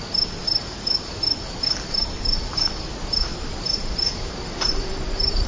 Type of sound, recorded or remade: recorded